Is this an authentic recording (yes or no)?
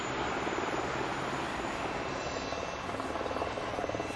yes